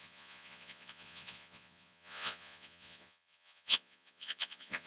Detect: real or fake fake